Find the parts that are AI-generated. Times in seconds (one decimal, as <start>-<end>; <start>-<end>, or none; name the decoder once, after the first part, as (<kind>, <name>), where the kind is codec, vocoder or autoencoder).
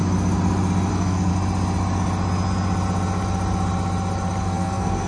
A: 0.9-1.3 (codec, SNAC); 4.4-5.1